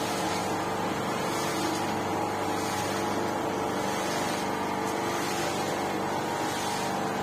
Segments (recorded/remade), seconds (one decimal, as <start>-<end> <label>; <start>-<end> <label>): 0.0-7.2 recorded